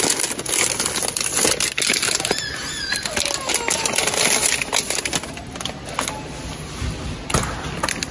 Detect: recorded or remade recorded